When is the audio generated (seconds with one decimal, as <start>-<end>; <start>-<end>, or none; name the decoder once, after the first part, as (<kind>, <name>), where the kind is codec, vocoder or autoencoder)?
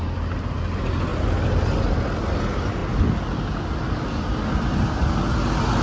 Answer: none